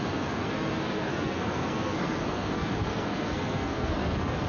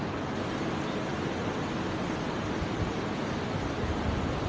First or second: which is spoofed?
first